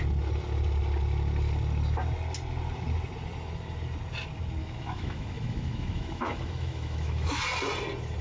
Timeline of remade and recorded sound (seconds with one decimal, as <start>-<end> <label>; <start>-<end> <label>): 0.0-4.6 recorded; 4.6-7.4 remade; 7.4-8.2 recorded